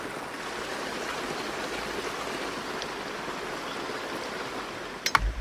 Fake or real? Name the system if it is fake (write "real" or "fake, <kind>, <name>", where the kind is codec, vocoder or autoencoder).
real